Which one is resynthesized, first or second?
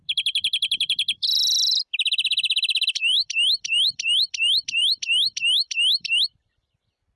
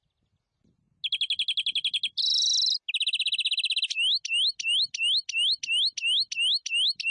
first